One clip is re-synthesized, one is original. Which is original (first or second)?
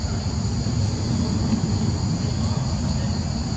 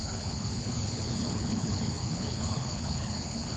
first